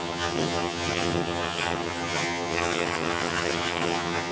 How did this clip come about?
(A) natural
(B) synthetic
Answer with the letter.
B